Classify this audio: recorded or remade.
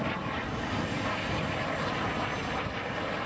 recorded